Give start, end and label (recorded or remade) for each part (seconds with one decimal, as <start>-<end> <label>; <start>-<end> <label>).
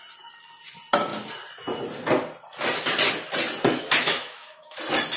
0.0-4.0 recorded; 4.0-4.8 remade; 4.8-5.2 recorded